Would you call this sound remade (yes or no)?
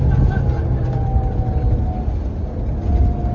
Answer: no